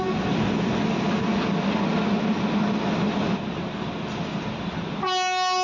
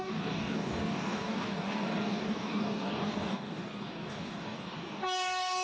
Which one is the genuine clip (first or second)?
first